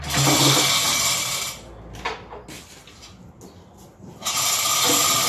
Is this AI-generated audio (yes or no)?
no